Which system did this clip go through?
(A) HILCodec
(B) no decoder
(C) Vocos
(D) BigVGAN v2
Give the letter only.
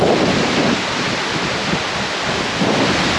B